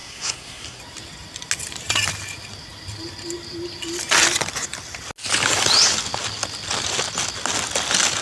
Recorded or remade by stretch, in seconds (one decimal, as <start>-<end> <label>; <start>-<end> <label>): 0.0-0.8 remade; 0.8-8.2 recorded